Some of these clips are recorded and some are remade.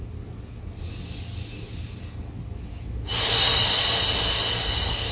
recorded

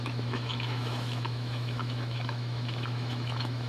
remade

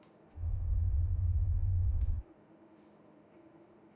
remade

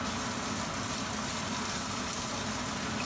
recorded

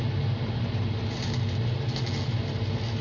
recorded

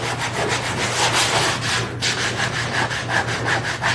recorded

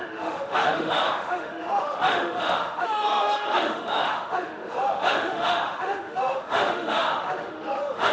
remade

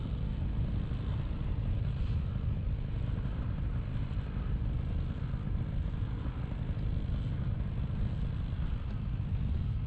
recorded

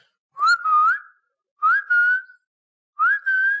recorded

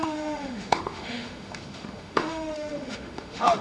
remade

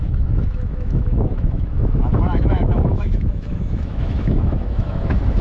remade